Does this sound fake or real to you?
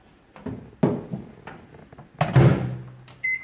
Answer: real